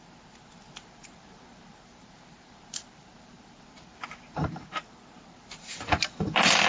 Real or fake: fake